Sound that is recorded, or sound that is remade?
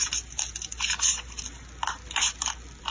recorded